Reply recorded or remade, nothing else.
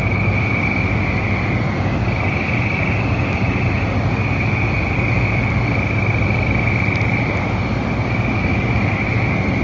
recorded